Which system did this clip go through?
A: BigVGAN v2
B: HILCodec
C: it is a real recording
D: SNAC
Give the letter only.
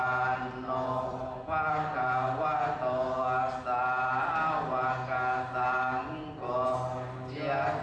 C